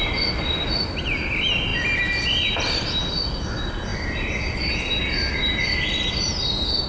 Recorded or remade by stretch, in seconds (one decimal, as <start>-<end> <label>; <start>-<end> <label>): 0.0-6.9 recorded